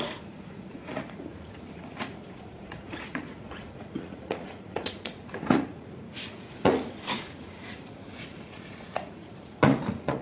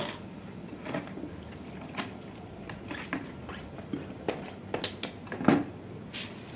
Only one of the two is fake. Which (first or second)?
first